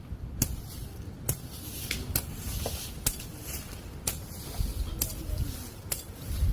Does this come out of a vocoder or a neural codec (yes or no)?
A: no